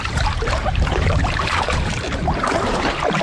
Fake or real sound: fake